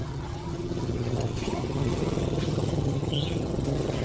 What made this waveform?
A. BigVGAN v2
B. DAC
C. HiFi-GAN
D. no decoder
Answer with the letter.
C